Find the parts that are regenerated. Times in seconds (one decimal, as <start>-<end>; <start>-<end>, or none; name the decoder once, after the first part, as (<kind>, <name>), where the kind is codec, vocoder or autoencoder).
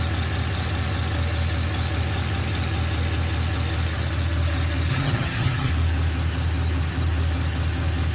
4.9-5.7 (vocoder, HiFi-GAN)